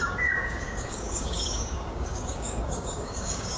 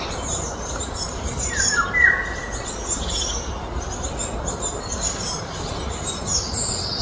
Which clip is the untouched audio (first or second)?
second